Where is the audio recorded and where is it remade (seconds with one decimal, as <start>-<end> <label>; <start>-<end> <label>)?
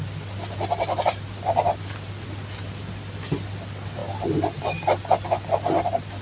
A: 0.0-6.2 recorded